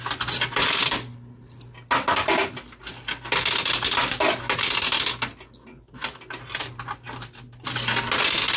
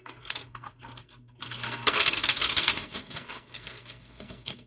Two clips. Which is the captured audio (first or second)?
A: first